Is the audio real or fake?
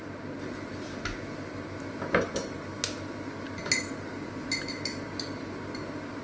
real